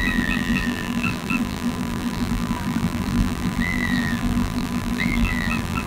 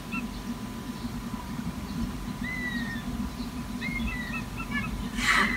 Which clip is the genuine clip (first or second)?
second